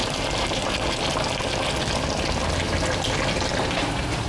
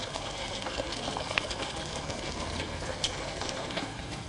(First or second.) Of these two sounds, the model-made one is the second